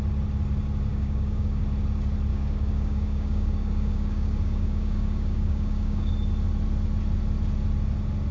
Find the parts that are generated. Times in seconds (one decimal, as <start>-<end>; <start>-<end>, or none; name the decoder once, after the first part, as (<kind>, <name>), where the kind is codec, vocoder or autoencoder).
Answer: 0.9-1.6 (codec, DAC); 2.3-6.1